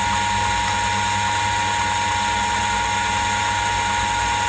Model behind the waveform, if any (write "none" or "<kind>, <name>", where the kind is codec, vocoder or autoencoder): none